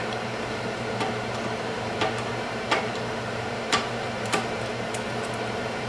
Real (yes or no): no